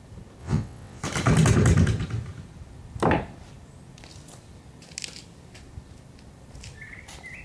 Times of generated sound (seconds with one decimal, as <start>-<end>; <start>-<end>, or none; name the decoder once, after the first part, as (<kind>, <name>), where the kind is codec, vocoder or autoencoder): 0.4-1.0 (vocoder, WaveNeXt)